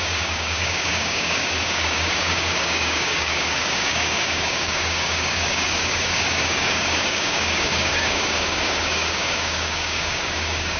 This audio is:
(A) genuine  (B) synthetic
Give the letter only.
B